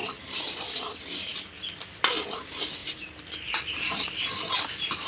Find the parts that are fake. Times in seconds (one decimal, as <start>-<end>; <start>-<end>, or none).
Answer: 0.0-0.7; 2.8-5.1